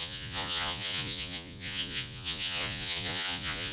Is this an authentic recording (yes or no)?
no